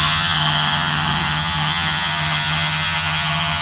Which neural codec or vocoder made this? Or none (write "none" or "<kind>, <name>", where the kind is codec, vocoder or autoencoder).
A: vocoder, HiFi-GAN